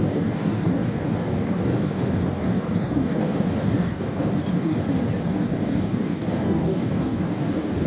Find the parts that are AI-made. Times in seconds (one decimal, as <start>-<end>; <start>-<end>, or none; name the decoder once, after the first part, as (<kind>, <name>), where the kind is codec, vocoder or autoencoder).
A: 0.0-4.8 (codec, DAC); 5.3-7.9